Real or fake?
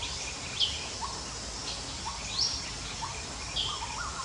real